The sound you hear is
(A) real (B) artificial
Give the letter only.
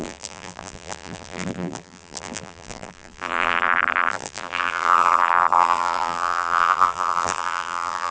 B